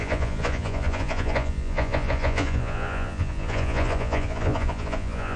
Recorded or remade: remade